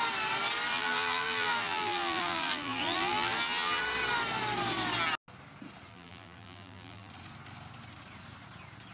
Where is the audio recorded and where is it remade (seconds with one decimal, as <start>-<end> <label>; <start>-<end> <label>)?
0.0-0.7 recorded; 0.7-3.8 remade; 3.8-5.9 recorded; 5.9-7.1 remade; 7.1-8.9 recorded